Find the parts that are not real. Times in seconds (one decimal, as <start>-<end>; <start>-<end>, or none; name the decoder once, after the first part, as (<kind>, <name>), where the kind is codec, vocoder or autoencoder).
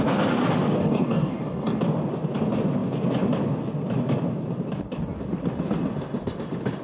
0.8-1.8 (codec, DAC)